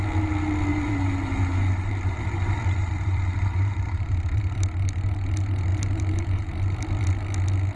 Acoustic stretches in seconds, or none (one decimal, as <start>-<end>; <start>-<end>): 0.0-0.7; 4.4-5.7; 6.5-7.8